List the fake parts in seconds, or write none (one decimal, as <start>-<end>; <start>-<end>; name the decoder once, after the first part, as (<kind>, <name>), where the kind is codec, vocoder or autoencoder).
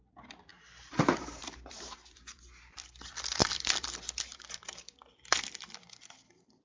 0.0-6.6 (vocoder, BigVGAN v2)